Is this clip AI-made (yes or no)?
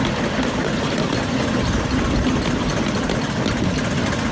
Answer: no